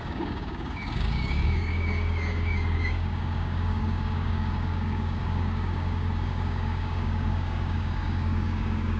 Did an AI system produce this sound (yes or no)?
yes